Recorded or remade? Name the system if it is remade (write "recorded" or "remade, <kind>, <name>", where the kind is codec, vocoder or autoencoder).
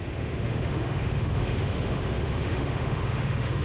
remade, autoencoder, DAC-VAE